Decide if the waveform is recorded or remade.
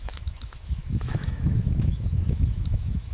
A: remade